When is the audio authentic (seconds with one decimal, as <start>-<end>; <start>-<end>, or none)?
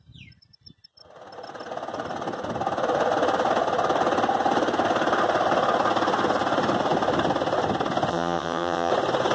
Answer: 0.0-8.1; 8.9-9.3